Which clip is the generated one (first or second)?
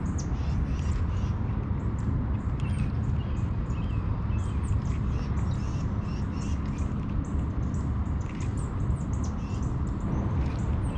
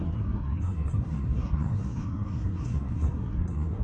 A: second